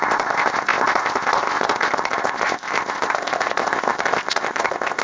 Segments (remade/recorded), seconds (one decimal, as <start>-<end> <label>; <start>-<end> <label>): 0.0-5.0 remade